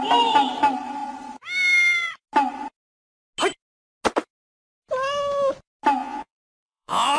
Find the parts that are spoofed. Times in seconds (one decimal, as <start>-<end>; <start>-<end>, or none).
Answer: 6.0-7.2